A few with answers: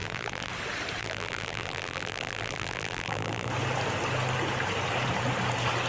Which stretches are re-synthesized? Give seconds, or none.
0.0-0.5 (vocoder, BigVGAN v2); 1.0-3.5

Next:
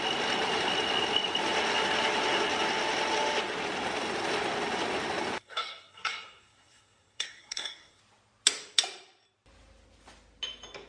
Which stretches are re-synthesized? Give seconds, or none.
5.4-8.0 (codec, SNAC)

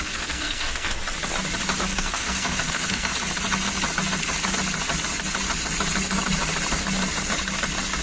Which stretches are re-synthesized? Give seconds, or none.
0.0-1.0 (codec, SNAC); 1.8-3.1

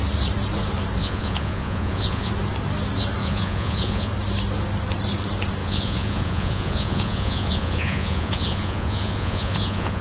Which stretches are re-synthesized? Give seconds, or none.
1.0-2.3 (vocoder, Vocos); 3.2-4.1; 5.6-10.0